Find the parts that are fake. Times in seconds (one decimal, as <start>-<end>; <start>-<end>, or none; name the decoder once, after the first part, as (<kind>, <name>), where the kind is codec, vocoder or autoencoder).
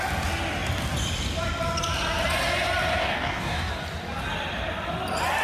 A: 3.0-3.7 (codec, DAC)